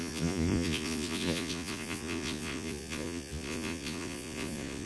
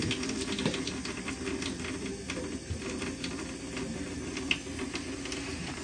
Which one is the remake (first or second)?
first